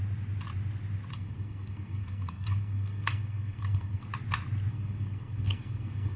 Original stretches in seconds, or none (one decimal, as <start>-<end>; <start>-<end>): 0.0-1.1; 4.1-4.7

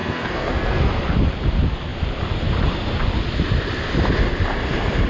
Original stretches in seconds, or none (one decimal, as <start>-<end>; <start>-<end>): 0.9-5.1

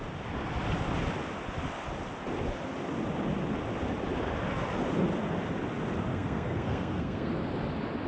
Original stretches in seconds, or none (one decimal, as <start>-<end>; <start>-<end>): 0.0-6.1; 7.3-8.1

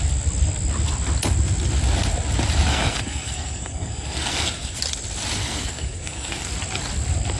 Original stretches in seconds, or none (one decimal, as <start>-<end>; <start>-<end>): 0.0-2.7; 4.8-5.4; 6.5-7.4

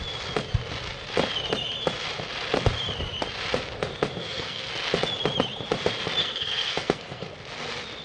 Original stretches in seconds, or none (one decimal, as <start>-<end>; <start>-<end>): 0.0-4.2; 4.7-6.2; 7.3-8.0